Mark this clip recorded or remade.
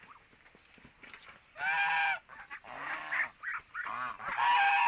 recorded